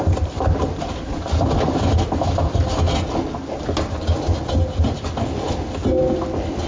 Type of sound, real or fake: real